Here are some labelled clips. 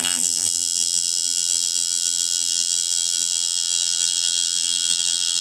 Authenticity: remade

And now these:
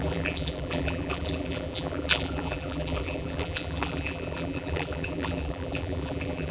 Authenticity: remade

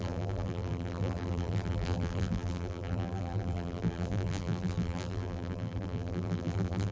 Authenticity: remade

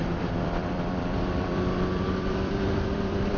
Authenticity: remade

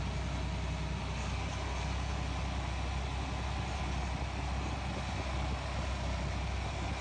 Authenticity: recorded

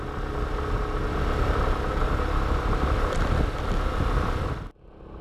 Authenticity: recorded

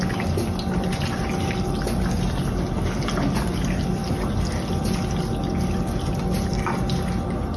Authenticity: recorded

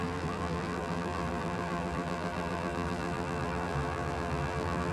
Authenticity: remade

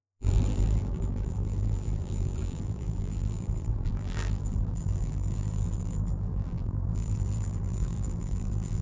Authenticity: remade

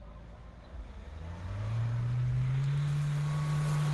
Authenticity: recorded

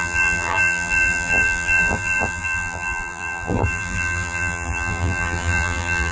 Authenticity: remade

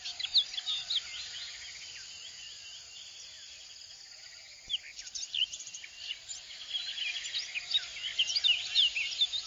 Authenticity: recorded